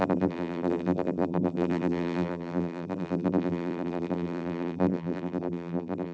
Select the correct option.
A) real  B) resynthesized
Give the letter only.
B